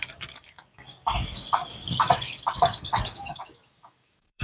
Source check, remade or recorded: remade